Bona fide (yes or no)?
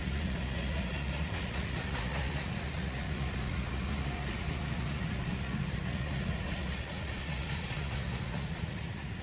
no